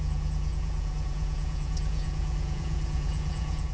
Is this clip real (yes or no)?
no